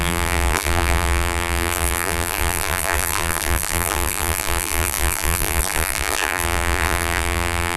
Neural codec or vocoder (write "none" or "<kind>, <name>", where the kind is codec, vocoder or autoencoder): vocoder, BigVGAN v2